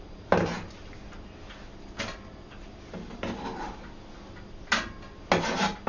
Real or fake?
real